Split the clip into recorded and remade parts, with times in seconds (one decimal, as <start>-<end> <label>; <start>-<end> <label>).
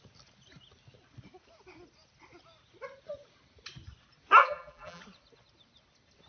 0.0-4.4 recorded; 4.4-5.0 remade; 5.0-6.3 recorded